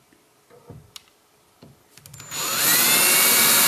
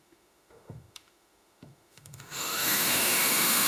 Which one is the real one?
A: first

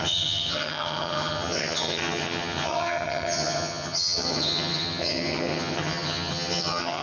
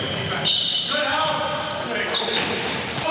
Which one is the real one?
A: second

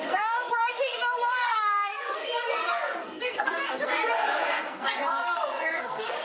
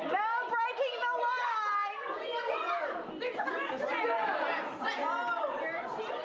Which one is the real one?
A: second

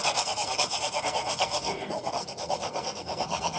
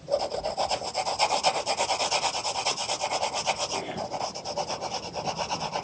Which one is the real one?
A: second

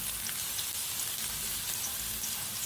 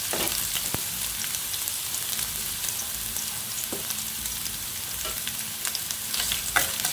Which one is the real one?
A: first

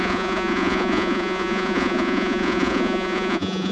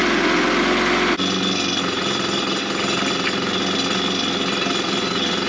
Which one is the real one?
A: second